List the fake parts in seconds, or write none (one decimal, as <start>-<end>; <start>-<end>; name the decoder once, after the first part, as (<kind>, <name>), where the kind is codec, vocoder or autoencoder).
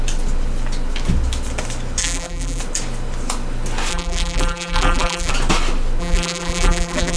2.0-2.6 (vocoder, BigVGAN v2); 3.9-5.3; 6.0-7.2